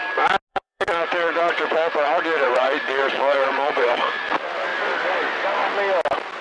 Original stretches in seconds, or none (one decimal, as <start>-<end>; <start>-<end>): 0.0-0.5; 4.1-6.4